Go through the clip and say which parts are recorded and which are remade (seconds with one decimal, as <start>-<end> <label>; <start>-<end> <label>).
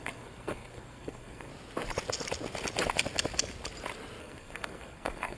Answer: 0.0-1.5 remade; 1.5-4.2 recorded; 4.2-5.4 remade